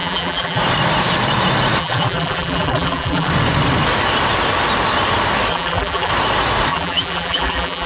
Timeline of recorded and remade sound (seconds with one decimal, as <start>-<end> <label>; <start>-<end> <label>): 0.0-0.6 remade; 0.6-1.8 recorded; 1.8-3.3 remade; 3.3-5.5 recorded; 5.5-6.1 remade; 6.1-6.7 recorded; 6.7-7.9 remade